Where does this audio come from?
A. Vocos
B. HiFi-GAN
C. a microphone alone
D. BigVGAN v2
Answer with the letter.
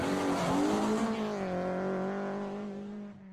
C